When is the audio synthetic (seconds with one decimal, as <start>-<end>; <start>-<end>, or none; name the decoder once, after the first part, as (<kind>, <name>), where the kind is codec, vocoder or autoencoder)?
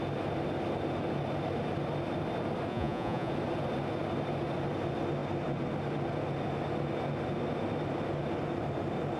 2.7-3.3 (vocoder, Vocos)